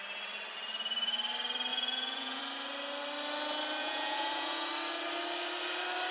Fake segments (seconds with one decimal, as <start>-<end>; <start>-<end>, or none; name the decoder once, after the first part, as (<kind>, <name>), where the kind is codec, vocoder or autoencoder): 1.7-2.4 (vocoder, Vocos); 3.8-4.7